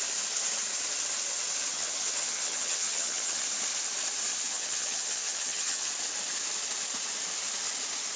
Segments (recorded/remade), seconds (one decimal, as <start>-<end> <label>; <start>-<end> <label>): 0.0-1.7 recorded; 1.7-3.4 remade; 3.4-4.3 recorded; 4.3-5.9 remade; 5.9-8.2 recorded